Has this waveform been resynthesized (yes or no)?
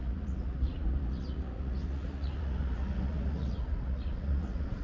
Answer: yes